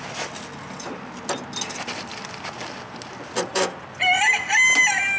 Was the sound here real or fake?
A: real